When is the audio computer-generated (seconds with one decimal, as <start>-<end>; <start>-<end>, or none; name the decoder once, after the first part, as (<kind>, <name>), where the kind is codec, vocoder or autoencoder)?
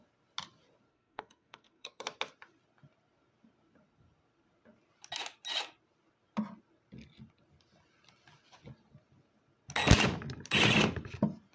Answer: 0.9-2.0 (codec, SNAC)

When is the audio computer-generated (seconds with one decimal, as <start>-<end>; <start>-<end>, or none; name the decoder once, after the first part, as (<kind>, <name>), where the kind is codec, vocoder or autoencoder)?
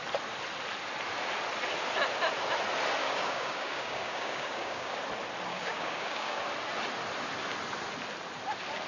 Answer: 3.0-4.9 (codec, DAC); 5.5-6.4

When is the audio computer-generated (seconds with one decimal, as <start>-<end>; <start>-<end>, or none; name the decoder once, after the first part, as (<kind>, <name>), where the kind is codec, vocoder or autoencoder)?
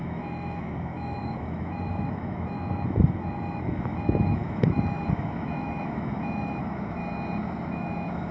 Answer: 0.0-7.0 (autoencoder, DAC-VAE); 7.7-8.3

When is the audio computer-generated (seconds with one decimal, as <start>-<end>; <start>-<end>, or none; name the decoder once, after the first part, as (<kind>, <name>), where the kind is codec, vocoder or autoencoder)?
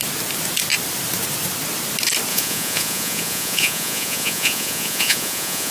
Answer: 2.3-5.7 (vocoder, Vocos)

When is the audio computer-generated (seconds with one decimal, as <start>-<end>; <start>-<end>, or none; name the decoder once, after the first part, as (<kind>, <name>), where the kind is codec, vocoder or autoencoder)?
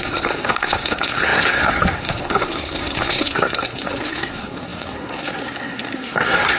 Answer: 0.0-6.6 (codec, SNAC)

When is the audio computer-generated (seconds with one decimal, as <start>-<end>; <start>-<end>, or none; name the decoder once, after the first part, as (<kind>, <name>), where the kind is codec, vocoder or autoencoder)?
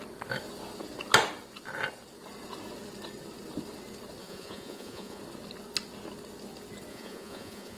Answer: 4.2-5.2 (vocoder, Vocos); 6.9-7.8